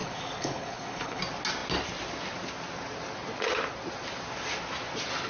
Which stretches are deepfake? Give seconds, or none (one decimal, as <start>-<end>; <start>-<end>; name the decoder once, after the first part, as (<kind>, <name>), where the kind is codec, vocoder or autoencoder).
0.0-1.2 (codec, HILCodec)